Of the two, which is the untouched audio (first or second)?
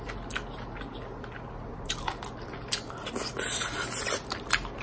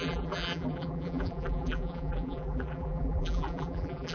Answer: first